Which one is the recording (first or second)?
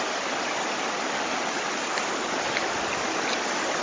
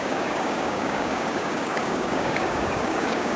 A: first